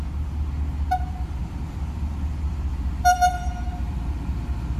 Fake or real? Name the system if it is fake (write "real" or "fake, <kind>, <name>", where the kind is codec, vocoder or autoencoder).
real